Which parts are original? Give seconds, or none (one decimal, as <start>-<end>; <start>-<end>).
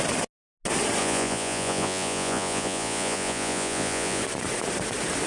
0.0-1.0; 4.2-5.3